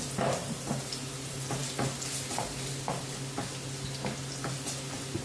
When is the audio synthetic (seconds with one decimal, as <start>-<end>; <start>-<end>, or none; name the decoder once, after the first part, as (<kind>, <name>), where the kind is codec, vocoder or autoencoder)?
0.4-0.9 (vocoder, BigVGAN v2)